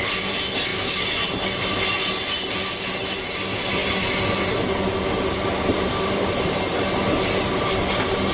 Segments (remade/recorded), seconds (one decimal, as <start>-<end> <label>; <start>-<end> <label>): 0.0-8.3 recorded

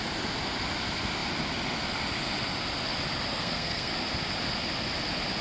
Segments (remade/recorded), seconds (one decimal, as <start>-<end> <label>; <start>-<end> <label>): 0.0-3.3 recorded; 3.3-3.9 remade; 3.9-5.4 recorded

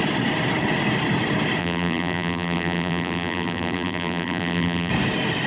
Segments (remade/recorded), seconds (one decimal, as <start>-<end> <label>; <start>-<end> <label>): 0.0-1.6 recorded; 1.6-4.9 remade; 4.9-5.5 recorded

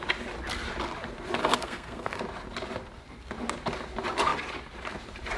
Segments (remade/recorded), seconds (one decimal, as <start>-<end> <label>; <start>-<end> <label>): 0.0-1.4 recorded; 1.4-2.2 remade; 2.2-5.4 recorded

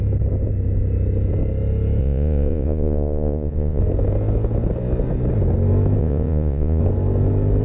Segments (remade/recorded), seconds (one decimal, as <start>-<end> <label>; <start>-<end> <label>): 0.0-2.0 recorded; 2.0-3.8 remade; 3.8-6.0 recorded; 6.0-6.8 remade; 6.8-7.6 recorded

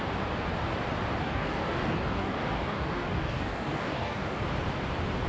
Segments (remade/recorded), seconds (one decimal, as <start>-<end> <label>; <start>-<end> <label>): 0.0-1.2 recorded; 1.2-4.4 remade; 4.4-5.3 recorded

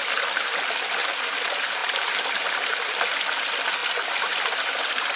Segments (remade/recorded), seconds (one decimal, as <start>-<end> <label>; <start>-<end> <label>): 0.0-5.2 recorded

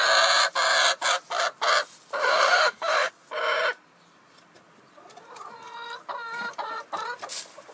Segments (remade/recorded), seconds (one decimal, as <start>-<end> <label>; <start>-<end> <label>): 0.0-2.2 recorded; 2.2-3.1 remade; 3.1-7.7 recorded